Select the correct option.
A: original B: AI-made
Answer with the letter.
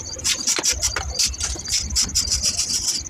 A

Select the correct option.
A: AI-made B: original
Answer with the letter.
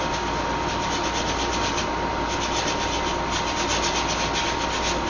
B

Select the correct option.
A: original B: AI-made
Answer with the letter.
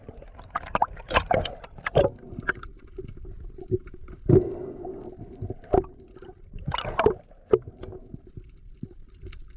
A